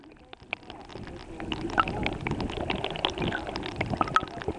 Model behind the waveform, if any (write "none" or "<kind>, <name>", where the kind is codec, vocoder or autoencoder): none